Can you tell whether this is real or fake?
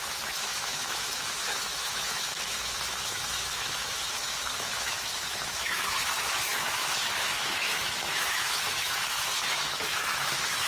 fake